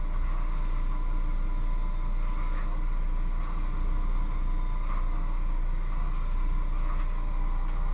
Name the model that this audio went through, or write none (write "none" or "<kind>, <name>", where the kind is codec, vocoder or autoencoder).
none